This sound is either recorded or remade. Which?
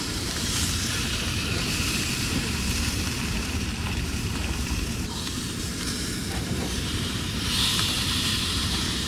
remade